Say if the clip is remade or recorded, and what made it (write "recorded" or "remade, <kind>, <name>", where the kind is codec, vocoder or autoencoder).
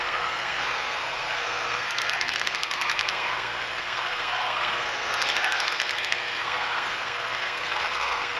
remade, codec, SNAC